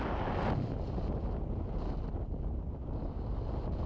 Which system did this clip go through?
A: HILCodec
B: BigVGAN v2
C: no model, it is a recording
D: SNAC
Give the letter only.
C